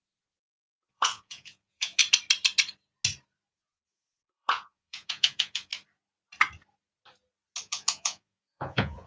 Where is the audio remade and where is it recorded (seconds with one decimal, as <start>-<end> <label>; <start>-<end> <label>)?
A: 0.0-2.0 remade; 2.0-3.5 recorded; 3.5-5.7 remade; 5.7-7.6 recorded; 7.6-9.1 remade